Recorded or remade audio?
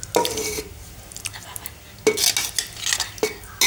recorded